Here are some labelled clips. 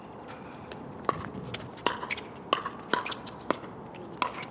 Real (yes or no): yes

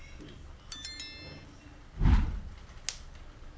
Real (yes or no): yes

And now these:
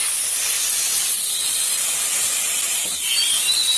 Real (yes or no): yes